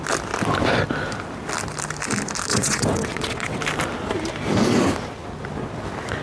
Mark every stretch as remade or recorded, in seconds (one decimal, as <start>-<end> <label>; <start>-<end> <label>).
0.0-2.5 recorded; 2.5-3.6 remade; 3.6-6.2 recorded